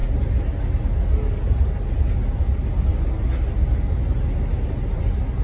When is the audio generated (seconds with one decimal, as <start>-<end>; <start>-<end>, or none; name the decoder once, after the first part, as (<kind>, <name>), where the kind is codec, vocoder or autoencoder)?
none